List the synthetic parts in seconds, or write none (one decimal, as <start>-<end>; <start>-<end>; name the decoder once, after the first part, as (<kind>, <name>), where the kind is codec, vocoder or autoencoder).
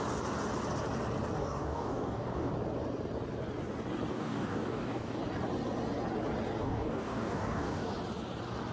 1.4-2.5 (codec, DAC); 4.1-5.2; 6.6-7.9